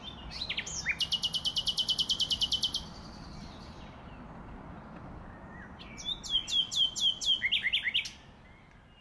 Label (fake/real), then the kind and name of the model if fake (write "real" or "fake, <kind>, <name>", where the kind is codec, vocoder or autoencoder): real